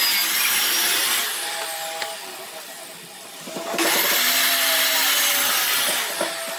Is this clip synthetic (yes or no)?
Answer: no